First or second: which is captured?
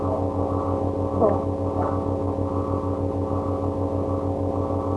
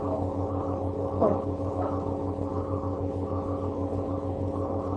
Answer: first